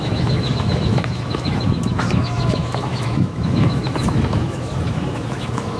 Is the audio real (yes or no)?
no